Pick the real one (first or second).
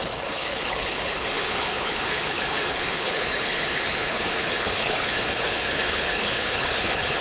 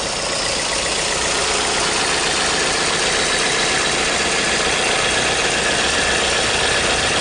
second